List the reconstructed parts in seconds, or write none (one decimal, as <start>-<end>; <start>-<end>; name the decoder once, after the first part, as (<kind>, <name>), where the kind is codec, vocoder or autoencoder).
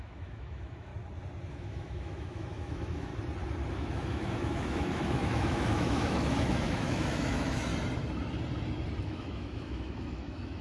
0.0-0.9 (autoencoder, DAC-VAE); 1.5-3.1; 3.7-7.7; 9.0-10.6